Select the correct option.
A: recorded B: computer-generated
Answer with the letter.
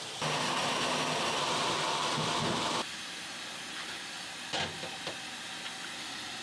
A